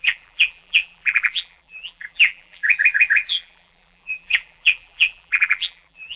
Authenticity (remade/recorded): remade